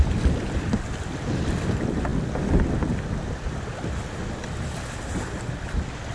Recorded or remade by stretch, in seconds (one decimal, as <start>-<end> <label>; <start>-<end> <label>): 0.0-6.1 recorded